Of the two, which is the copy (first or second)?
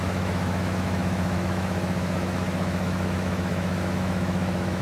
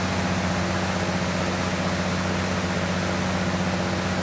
first